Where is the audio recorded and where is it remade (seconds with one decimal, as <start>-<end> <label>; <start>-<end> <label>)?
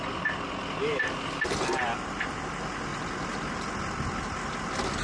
0.0-5.0 recorded